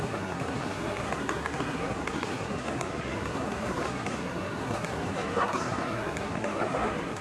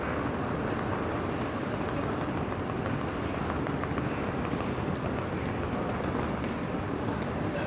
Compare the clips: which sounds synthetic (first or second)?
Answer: first